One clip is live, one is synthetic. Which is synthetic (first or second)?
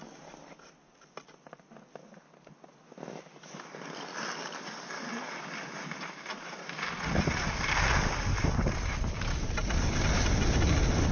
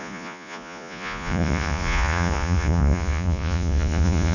second